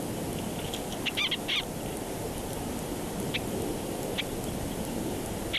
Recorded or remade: recorded